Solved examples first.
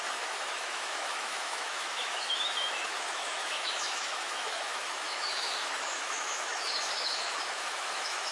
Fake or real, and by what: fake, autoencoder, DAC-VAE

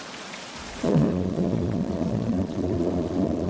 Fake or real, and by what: fake, vocoder, Vocos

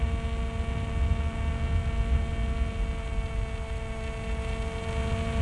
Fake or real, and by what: real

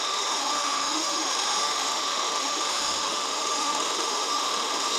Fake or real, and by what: fake, autoencoder, DAC-VAE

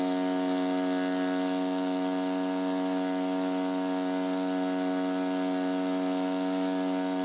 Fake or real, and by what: real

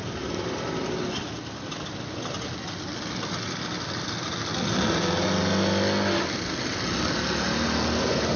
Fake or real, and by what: real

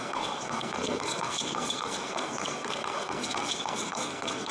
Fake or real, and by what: fake, codec, SNAC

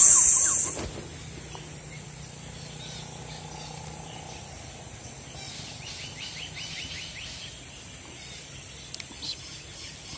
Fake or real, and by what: real